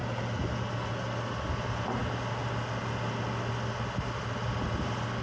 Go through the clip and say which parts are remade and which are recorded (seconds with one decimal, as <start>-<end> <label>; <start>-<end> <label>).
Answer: 0.0-5.2 recorded